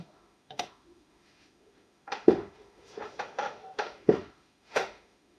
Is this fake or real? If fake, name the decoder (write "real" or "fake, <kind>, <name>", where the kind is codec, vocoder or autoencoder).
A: fake, autoencoder, DAC-VAE